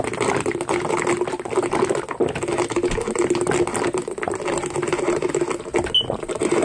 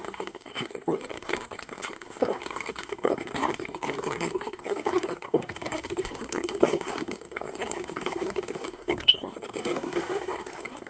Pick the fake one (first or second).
second